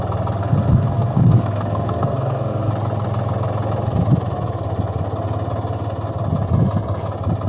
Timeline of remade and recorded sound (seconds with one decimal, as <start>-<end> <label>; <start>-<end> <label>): 0.0-0.4 recorded; 0.4-2.7 remade; 2.7-7.5 recorded

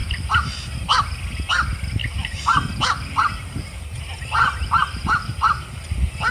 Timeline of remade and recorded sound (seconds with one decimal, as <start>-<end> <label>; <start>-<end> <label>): 0.0-0.8 remade; 0.8-2.0 recorded; 2.0-5.8 remade; 5.8-6.3 recorded

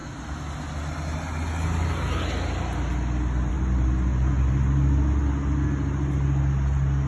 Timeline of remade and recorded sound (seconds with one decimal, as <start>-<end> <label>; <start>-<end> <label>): 0.0-7.1 recorded

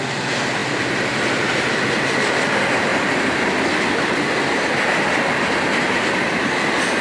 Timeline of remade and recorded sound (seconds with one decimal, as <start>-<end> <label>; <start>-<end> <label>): 0.0-7.0 recorded

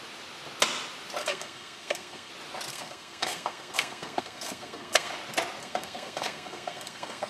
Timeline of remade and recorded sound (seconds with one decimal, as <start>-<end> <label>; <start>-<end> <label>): 0.0-1.2 recorded; 1.2-2.3 remade; 2.3-2.7 recorded; 2.7-5.1 remade; 5.1-5.6 recorded; 5.6-7.3 remade

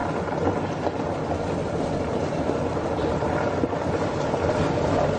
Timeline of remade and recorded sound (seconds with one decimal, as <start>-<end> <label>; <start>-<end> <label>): 0.0-5.2 recorded

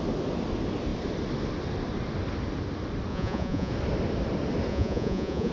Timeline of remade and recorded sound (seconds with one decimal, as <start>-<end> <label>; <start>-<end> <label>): 0.0-3.1 recorded; 3.1-3.7 remade; 3.7-4.7 recorded; 4.7-5.5 remade

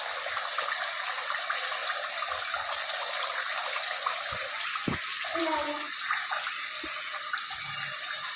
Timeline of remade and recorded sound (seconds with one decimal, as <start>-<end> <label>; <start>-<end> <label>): 0.0-8.4 recorded